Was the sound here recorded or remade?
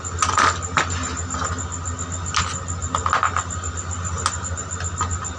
recorded